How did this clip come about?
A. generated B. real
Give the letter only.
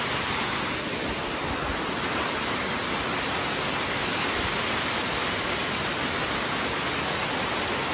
B